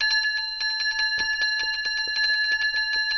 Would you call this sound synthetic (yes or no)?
no